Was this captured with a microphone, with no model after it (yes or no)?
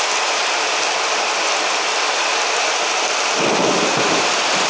yes